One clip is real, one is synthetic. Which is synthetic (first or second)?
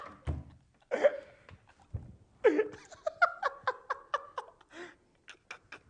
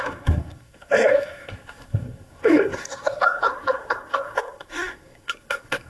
second